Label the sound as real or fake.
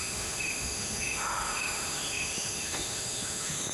fake